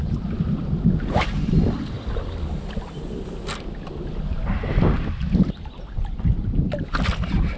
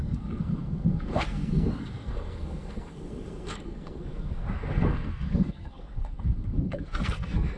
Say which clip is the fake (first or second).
second